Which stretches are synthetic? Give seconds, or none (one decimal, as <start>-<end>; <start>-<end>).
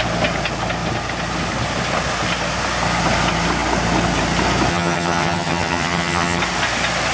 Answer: 4.7-6.4